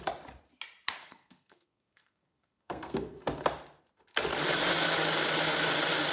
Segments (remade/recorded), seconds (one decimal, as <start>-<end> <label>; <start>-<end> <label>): 0.0-1.0 recorded; 1.0-3.2 remade; 3.2-6.1 recorded